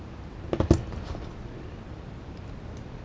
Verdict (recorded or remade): recorded